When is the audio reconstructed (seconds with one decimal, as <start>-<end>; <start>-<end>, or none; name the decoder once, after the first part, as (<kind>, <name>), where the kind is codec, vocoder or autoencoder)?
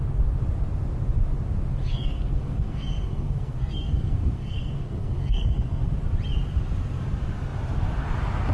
1.8-5.9 (codec, SNAC)